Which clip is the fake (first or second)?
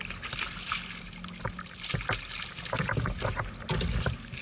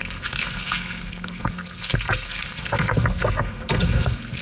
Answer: second